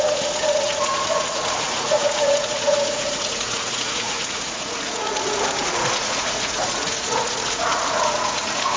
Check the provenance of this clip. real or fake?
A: fake